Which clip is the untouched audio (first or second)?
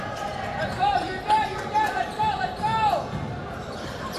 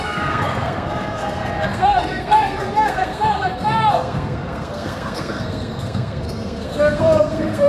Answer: first